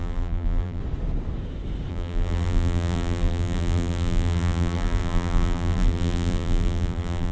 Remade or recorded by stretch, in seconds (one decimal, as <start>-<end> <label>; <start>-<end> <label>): 0.0-0.8 remade; 0.8-1.9 recorded; 1.9-7.3 remade